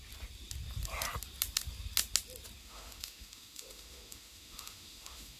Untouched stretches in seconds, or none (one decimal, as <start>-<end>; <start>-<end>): 0.0-2.6